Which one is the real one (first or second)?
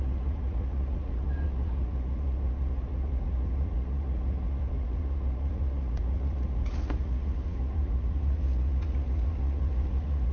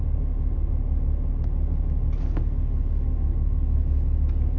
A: second